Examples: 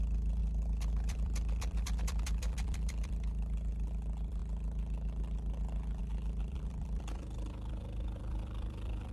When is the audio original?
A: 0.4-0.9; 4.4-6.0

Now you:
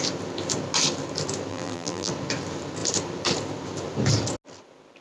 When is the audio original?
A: 0.0-1.5; 2.1-5.0

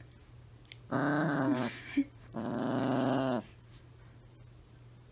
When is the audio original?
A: 0.0-1.1; 4.2-5.1

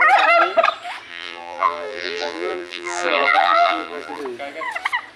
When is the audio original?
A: 0.0-1.1; 4.2-5.2

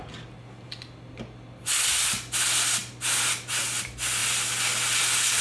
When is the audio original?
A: 0.0-5.4